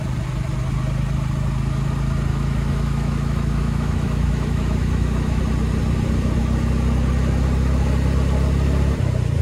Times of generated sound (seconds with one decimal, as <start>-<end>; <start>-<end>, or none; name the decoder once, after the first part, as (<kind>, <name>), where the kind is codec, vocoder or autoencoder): 2.3-5.4 (autoencoder, DAC-VAE)